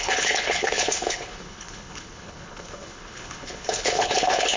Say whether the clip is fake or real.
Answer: fake